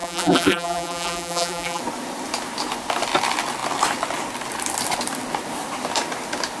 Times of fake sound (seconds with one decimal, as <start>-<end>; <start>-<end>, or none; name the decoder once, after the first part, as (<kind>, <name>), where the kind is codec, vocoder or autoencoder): 0.0-1.8 (vocoder, BigVGAN v2)